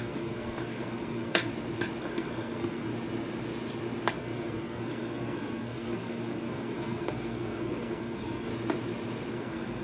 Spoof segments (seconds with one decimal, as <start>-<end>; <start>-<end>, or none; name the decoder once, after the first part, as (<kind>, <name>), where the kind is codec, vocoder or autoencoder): 0.0-1.5 (codec, SNAC); 2.0-2.9; 4.1-8.5; 9.3-9.8